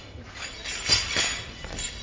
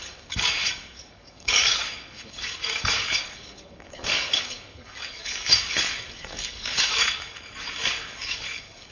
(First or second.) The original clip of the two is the first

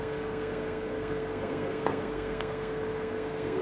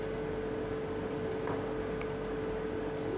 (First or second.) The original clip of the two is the second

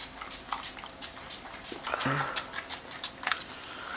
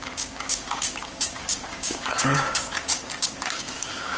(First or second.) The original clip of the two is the first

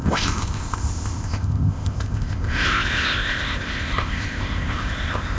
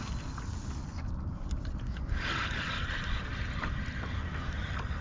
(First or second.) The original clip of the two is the second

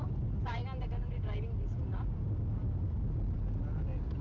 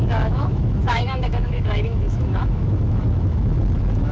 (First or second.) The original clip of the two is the first